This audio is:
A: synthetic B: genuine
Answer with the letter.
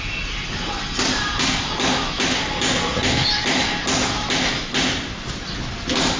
B